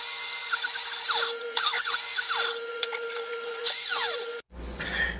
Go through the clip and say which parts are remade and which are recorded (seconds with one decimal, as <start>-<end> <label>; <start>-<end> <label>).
0.0-0.4 remade; 0.4-1.4 recorded; 1.4-2.1 remade; 2.1-2.7 recorded; 2.7-5.2 remade